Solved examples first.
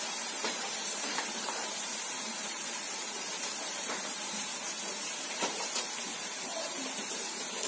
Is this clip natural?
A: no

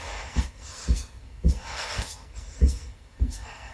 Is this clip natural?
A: no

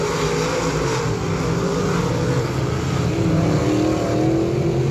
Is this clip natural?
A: yes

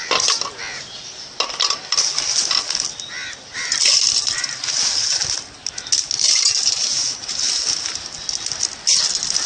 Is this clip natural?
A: yes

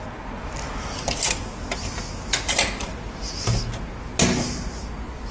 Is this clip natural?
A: yes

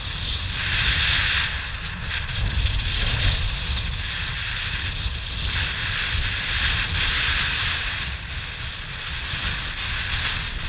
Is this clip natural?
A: yes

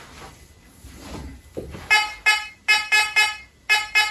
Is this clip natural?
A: yes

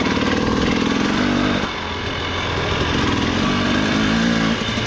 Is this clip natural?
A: yes